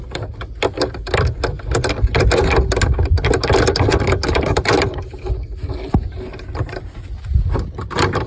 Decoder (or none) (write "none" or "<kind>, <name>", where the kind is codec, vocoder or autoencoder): none